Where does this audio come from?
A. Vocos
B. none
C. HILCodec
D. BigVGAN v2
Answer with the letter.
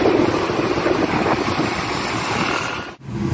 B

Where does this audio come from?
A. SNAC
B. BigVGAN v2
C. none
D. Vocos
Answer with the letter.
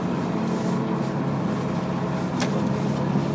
B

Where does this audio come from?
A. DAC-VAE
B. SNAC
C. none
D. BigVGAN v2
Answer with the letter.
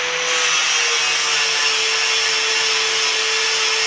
C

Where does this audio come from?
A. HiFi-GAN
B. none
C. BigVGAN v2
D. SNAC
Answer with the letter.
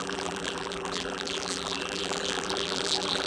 C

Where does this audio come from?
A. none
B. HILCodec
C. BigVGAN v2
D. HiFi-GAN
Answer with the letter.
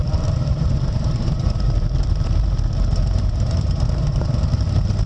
C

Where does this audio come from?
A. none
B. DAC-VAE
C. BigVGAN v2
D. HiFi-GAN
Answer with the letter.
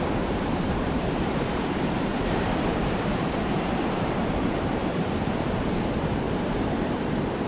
C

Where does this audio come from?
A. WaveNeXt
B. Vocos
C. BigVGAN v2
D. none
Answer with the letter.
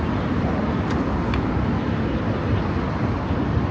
D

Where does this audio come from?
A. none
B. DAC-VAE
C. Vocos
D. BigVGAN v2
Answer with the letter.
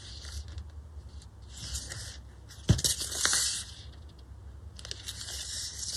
A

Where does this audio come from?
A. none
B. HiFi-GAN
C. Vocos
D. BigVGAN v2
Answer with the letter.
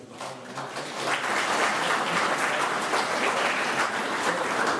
A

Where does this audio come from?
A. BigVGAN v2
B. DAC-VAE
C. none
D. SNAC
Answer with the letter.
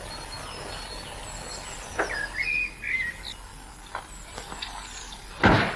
C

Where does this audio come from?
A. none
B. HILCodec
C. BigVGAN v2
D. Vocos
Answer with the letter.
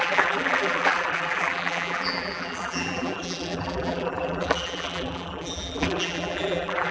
C